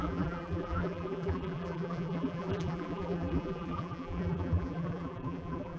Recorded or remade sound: remade